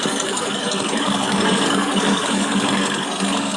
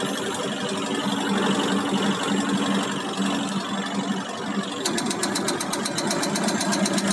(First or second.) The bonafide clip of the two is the second